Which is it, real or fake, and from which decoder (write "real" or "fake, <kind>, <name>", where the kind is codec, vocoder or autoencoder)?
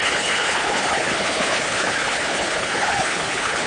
fake, codec, HILCodec